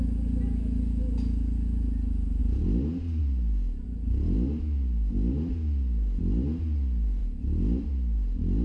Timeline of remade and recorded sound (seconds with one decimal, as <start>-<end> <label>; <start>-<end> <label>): 0.0-8.6 recorded